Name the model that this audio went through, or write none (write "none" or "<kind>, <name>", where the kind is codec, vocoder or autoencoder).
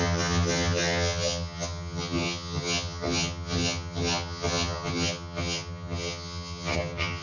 vocoder, HiFi-GAN